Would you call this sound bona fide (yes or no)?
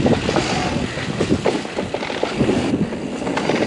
yes